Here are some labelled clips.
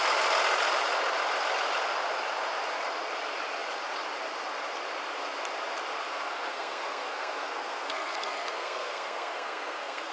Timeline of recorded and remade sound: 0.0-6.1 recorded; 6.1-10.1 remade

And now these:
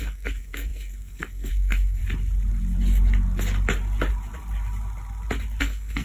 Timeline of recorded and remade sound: 0.0-2.0 remade; 2.0-5.6 recorded; 5.6-6.0 remade

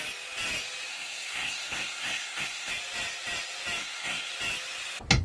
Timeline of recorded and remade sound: 0.0-0.9 recorded; 0.9-2.7 remade; 2.7-3.8 recorded; 3.8-4.3 remade; 4.3-5.2 recorded

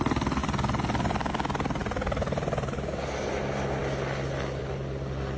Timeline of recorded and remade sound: 0.0-5.4 recorded